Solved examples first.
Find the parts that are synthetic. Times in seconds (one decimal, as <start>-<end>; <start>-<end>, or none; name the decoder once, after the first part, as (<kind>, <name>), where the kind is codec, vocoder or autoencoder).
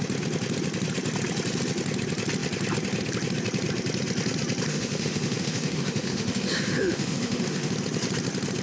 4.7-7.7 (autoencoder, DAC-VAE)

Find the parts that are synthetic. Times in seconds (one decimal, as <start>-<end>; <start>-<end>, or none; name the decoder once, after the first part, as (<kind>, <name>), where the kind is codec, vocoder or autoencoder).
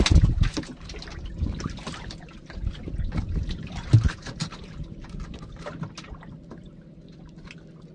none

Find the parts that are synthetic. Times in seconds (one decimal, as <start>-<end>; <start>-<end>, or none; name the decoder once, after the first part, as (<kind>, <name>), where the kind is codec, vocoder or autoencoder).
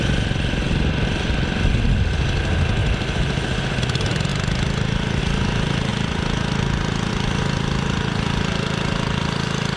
none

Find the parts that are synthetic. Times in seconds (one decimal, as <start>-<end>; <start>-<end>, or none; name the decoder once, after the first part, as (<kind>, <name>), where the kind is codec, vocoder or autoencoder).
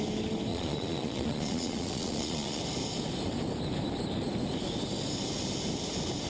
0.5-2.6 (vocoder, Vocos)